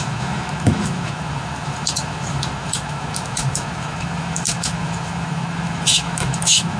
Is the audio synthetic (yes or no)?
yes